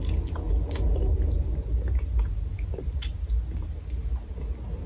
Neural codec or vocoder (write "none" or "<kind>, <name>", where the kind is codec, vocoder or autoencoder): none